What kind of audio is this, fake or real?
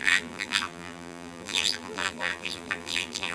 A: fake